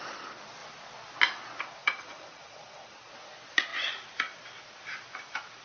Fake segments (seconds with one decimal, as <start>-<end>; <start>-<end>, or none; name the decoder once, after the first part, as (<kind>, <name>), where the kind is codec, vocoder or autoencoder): 1.8-3.1 (vocoder, Vocos)